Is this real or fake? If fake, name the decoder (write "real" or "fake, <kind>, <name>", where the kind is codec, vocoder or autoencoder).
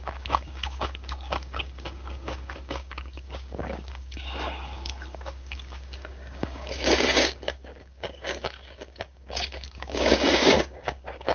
fake, codec, DAC